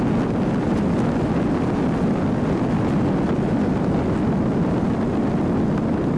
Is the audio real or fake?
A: real